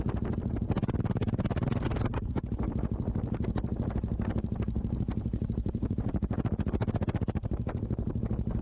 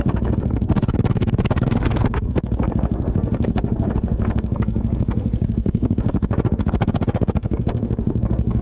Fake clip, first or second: second